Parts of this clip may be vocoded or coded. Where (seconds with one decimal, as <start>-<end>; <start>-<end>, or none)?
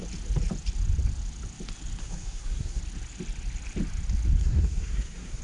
2.0-2.8; 4.4-5.4